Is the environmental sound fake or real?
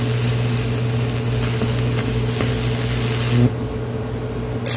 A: real